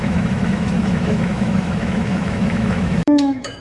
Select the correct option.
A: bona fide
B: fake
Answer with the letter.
B